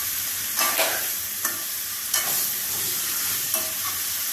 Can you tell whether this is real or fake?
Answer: real